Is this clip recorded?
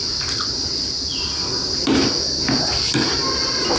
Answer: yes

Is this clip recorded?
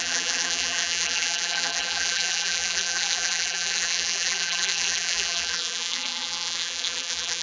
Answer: no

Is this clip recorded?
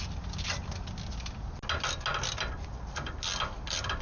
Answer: yes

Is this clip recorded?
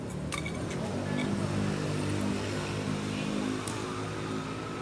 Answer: yes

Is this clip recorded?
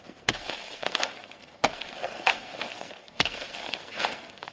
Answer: no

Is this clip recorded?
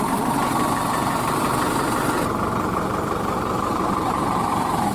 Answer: no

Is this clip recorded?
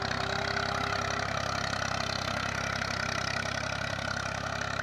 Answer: yes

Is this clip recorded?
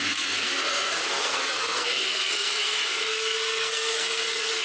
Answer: no